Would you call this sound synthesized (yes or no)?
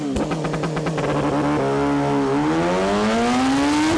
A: no